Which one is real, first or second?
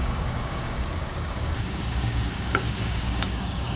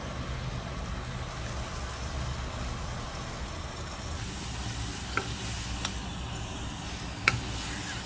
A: second